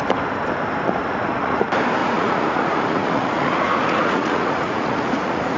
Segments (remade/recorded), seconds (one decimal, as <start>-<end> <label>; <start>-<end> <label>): 0.0-1.0 recorded; 1.0-1.6 remade; 1.6-2.0 recorded; 2.0-5.6 remade